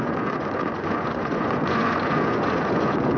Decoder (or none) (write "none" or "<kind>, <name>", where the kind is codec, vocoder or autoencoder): vocoder, Vocos